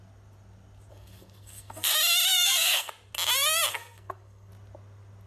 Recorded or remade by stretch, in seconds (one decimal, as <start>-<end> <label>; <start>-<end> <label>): 0.0-0.9 recorded; 0.9-1.9 remade; 1.9-2.3 recorded; 2.3-2.9 remade; 2.9-3.7 recorded; 3.7-4.5 remade; 4.5-5.3 recorded